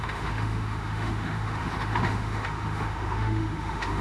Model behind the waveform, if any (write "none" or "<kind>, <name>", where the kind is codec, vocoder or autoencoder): autoencoder, DAC-VAE